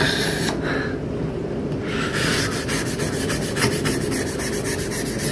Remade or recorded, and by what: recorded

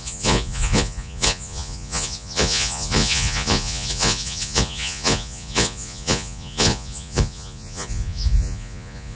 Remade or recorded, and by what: remade, vocoder, Vocos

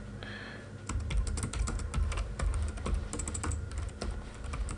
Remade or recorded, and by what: recorded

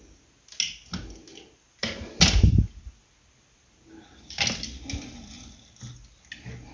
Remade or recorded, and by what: recorded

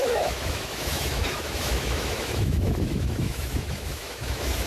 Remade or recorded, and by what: remade, autoencoder, DAC-VAE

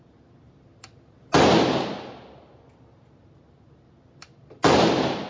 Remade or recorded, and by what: recorded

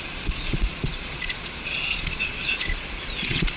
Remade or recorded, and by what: remade, vocoder, Vocos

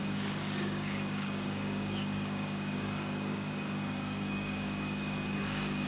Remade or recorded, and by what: remade, codec, DAC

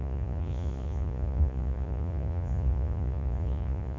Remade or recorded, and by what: remade, vocoder, Vocos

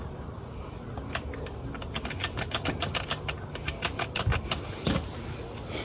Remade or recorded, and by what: recorded